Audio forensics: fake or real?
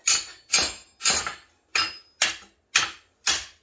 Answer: real